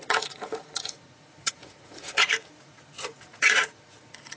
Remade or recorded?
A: remade